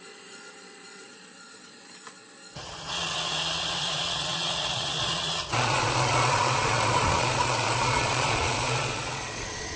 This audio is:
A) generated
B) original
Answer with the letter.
A